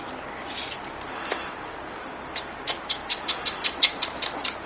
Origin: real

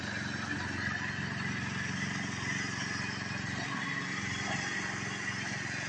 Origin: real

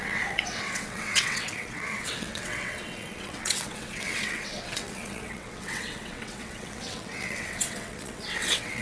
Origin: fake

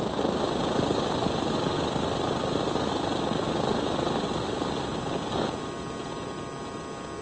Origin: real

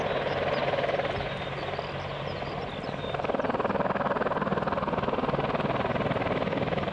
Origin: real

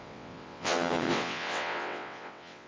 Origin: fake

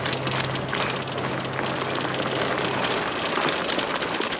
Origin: real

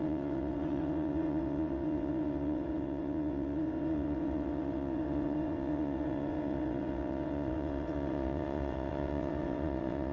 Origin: fake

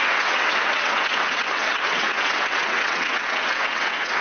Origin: fake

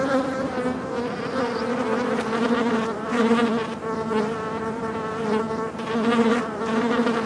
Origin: real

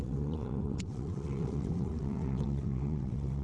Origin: fake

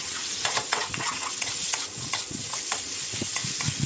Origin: fake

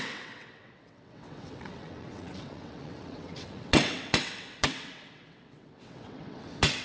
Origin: fake